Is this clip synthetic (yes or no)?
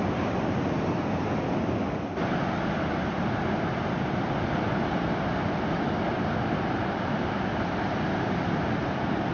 yes